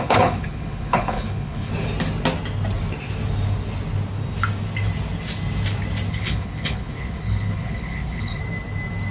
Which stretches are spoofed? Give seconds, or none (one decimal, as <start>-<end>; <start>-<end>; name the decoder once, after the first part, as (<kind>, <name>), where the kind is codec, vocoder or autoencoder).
0.0-1.7 (codec, HILCodec); 6.1-8.4